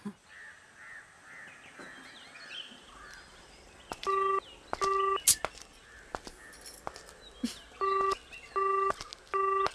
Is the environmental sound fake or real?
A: real